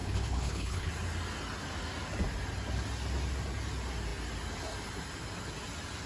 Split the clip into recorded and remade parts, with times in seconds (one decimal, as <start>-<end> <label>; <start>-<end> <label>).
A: 0.0-0.9 remade; 0.9-6.1 recorded